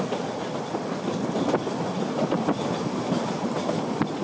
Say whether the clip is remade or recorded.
recorded